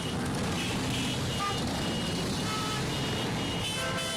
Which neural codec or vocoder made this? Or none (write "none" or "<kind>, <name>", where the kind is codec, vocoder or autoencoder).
none